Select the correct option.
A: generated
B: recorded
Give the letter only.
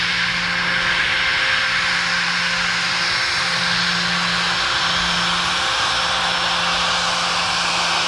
B